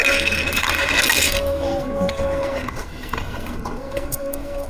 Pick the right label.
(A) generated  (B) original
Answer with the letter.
A